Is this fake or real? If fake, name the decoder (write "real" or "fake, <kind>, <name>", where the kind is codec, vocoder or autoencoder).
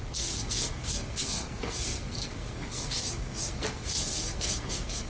fake, codec, SNAC